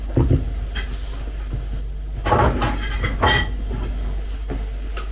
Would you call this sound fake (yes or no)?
no